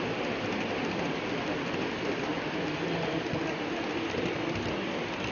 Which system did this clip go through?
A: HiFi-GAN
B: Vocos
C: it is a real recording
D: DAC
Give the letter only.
C